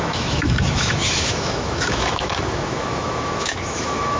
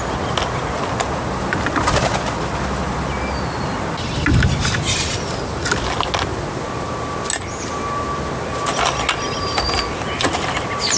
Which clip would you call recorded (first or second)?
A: second